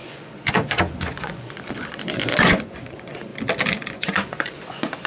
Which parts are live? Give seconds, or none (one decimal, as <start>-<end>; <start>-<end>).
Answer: 3.3-3.9